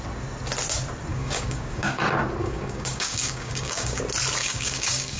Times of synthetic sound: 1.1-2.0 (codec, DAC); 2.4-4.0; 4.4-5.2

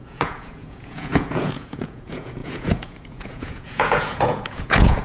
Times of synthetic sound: 0.0-5.0 (vocoder, Vocos)

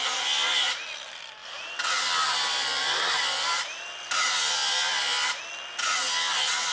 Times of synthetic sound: 1.4-5.4 (vocoder, BigVGAN v2)